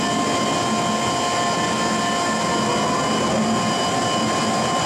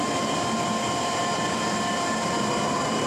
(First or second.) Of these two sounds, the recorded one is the first